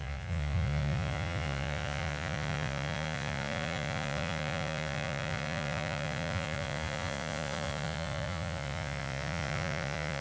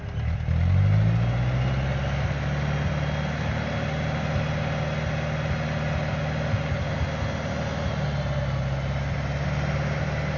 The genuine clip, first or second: second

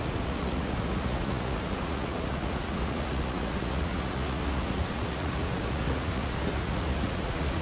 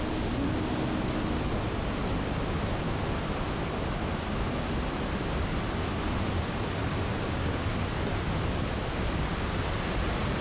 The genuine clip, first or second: second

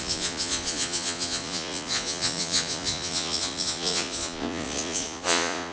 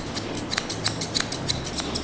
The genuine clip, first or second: second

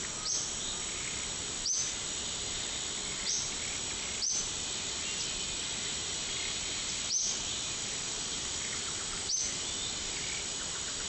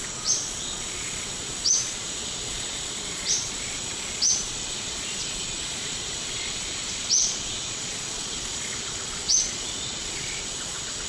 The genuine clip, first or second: first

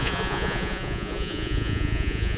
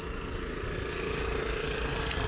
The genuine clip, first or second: second